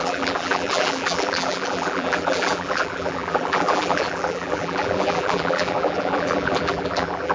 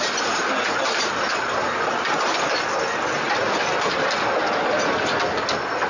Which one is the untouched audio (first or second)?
second